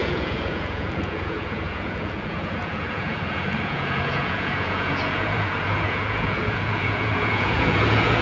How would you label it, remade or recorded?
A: remade